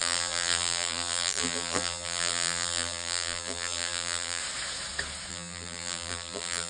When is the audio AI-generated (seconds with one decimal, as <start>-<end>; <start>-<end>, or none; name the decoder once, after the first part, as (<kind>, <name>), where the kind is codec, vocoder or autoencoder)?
0.0-4.4 (vocoder, BigVGAN v2); 5.3-6.7